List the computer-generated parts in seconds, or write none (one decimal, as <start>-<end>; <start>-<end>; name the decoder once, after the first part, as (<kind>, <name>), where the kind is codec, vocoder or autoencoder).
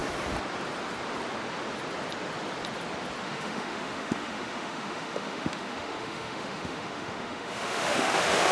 3.2-8.5 (autoencoder, DAC-VAE)